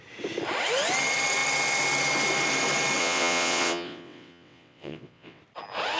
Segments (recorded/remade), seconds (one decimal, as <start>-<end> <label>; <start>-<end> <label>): 0.0-3.0 recorded; 3.0-5.4 remade; 5.4-6.0 recorded